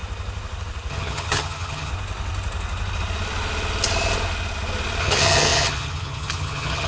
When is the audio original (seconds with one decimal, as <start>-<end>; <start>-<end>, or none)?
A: 0.0-0.9; 1.9-5.0